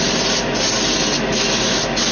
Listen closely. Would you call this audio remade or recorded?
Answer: recorded